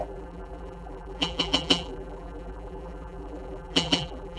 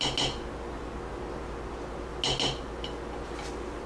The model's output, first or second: first